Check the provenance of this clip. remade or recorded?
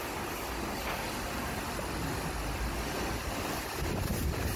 recorded